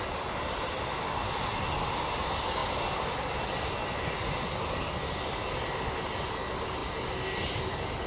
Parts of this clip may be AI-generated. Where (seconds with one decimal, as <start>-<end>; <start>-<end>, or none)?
none